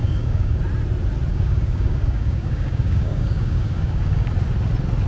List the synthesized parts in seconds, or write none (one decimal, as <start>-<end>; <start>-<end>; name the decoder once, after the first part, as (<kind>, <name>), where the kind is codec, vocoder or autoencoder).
0.0-0.6 (codec, DAC); 1.3-4.3

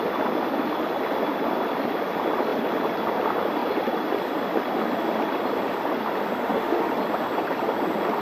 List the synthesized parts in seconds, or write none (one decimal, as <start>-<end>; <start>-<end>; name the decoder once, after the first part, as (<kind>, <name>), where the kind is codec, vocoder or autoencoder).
6.4-7.0 (autoencoder, DAC-VAE)

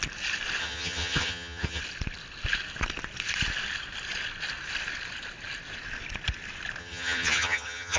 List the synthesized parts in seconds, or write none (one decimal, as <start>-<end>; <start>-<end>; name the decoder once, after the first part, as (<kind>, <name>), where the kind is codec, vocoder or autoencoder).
0.6-1.8 (vocoder, HiFi-GAN); 6.8-8.0

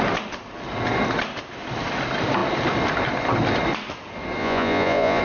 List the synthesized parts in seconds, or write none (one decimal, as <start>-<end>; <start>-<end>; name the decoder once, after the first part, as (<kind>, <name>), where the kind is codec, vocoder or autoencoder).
4.4-5.2 (vocoder, Vocos)

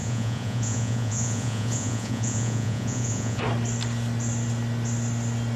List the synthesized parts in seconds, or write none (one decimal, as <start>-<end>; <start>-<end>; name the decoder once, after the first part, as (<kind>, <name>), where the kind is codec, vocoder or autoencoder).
0.0-3.4 (vocoder, Vocos)

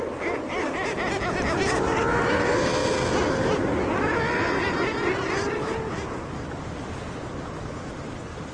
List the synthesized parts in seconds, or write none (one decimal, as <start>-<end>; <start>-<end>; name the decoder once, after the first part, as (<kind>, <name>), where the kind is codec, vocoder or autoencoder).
none

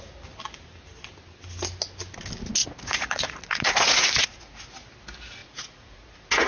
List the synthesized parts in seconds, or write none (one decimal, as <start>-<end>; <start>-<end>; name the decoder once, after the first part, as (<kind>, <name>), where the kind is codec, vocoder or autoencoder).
2.6-4.6 (vocoder, Vocos); 5.4-6.5

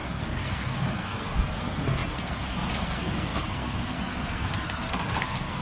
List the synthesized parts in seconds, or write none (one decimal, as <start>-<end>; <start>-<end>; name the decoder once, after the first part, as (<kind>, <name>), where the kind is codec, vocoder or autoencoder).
0.0-5.6 (codec, SNAC)